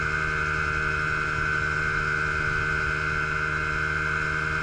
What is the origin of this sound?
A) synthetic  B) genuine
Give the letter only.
B